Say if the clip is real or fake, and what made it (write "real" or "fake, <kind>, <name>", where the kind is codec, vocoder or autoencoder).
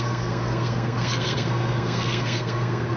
fake, codec, SNAC